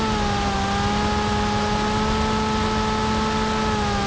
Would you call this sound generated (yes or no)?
no